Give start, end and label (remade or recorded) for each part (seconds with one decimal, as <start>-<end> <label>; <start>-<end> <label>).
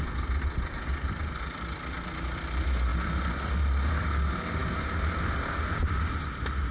0.0-6.7 recorded